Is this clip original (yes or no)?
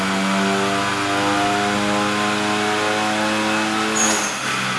yes